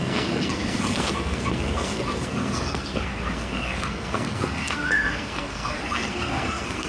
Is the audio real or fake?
fake